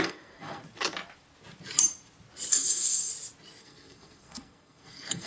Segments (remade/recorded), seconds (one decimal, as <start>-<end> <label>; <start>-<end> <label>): 0.0-0.6 remade; 0.6-2.5 recorded; 2.5-3.1 remade; 3.1-3.6 recorded; 3.6-5.3 remade